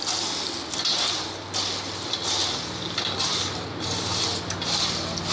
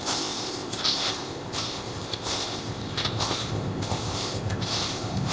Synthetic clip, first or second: second